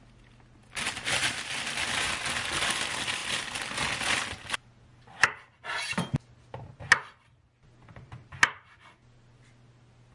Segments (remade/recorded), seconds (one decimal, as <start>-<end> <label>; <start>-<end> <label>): 0.0-0.6 recorded; 0.6-2.1 remade; 2.1-10.1 recorded